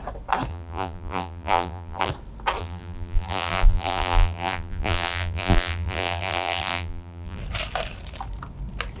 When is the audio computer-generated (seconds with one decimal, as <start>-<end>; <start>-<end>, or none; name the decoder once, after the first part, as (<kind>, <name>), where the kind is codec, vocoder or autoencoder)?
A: 0.5-2.1 (vocoder, BigVGAN v2); 2.6-7.4